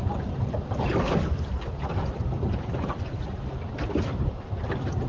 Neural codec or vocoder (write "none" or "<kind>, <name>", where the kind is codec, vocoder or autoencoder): none